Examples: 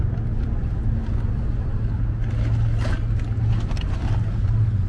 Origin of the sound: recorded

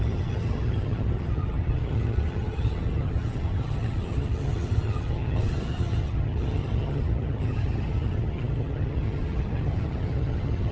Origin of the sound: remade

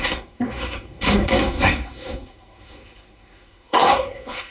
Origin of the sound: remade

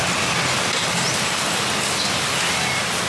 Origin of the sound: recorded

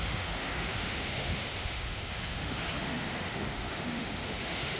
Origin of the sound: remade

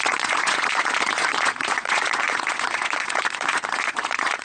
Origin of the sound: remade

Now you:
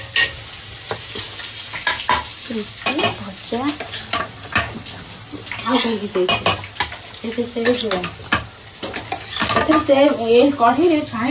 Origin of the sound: recorded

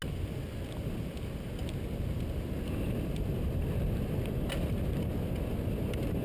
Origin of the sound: recorded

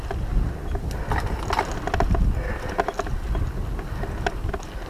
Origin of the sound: recorded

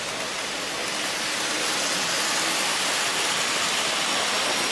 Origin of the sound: recorded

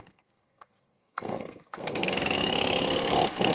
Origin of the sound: remade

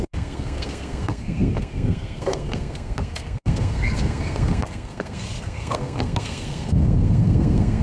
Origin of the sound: remade